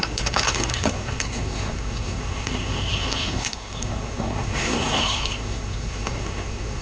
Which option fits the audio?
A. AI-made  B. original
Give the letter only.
A